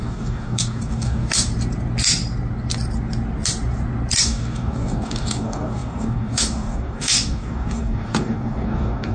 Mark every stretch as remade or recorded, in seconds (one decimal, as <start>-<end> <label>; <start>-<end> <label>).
0.0-1.5 remade; 1.5-4.2 recorded; 4.2-9.1 remade

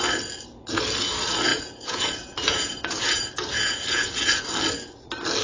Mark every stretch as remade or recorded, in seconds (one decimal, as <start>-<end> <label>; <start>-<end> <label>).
0.0-1.5 recorded; 1.5-4.4 remade; 4.4-5.4 recorded

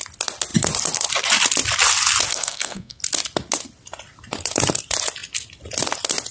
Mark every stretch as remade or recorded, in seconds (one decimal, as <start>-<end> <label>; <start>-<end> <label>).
0.0-2.3 recorded; 2.3-3.0 remade; 3.0-6.3 recorded

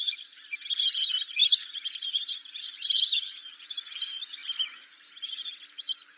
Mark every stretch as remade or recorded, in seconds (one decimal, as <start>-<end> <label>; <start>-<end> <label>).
0.0-1.4 recorded; 1.4-3.9 remade; 3.9-4.4 recorded; 4.4-5.4 remade; 5.4-6.2 recorded

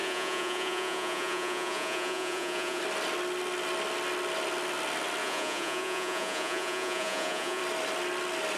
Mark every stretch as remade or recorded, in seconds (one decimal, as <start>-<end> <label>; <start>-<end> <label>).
0.0-2.8 remade; 2.8-5.2 recorded; 5.2-7.6 remade; 7.6-8.6 recorded

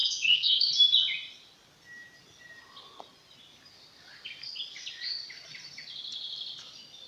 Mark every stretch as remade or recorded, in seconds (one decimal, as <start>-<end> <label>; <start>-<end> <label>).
0.0-0.7 remade; 0.7-7.1 recorded

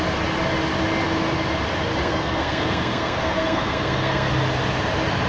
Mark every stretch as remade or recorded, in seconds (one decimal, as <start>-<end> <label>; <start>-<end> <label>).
0.0-2.0 recorded; 2.0-4.3 remade; 4.3-5.3 recorded

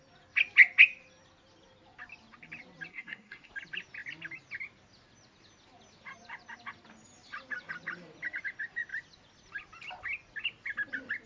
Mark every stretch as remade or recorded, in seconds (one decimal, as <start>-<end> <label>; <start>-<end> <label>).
0.0-2.9 recorded; 2.9-3.5 remade; 3.5-11.3 recorded